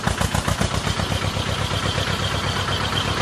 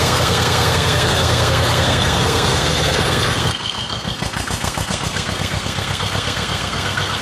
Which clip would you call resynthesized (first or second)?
second